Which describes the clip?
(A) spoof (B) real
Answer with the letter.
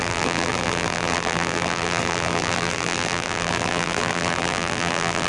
A